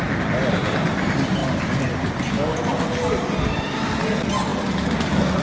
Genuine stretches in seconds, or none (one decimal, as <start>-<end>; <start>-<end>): 0.0-5.4